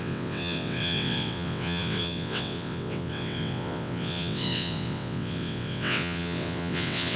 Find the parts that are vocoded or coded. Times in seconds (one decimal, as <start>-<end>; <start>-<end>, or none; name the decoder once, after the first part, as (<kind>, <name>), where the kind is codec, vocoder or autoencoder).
0.0-7.2 (vocoder, WaveNeXt)